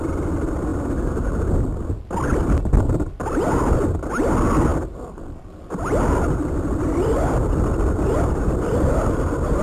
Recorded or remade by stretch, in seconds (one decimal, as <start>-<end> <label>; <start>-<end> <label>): 0.0-9.6 recorded